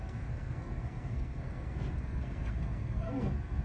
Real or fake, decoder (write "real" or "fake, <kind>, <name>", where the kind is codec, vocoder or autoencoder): fake, codec, SNAC